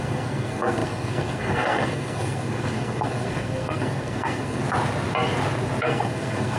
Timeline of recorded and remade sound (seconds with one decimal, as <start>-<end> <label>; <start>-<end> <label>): 0.0-4.6 remade; 4.6-5.8 recorded; 5.8-6.6 remade